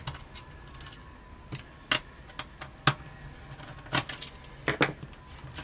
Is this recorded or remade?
recorded